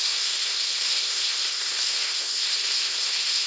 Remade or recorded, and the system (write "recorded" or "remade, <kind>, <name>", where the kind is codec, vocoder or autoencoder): remade, codec, SNAC